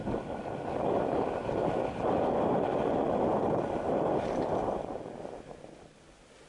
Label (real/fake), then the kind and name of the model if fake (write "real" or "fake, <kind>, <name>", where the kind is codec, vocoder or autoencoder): real